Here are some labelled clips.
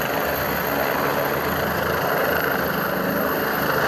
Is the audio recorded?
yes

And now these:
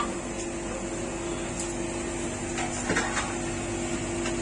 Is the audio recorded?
yes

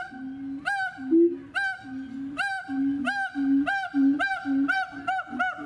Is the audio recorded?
yes